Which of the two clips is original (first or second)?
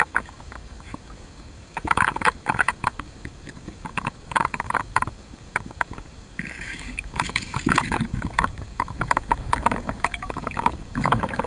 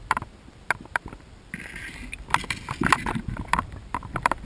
second